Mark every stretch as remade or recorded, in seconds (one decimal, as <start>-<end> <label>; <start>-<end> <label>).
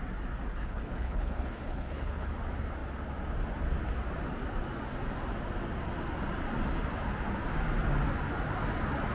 0.0-0.5 recorded; 0.5-2.3 remade; 2.3-9.1 recorded